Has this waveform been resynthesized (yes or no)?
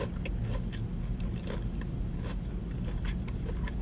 no